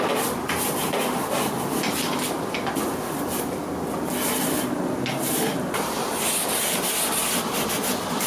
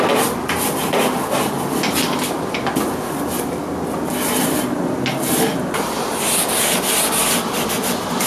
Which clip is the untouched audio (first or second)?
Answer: second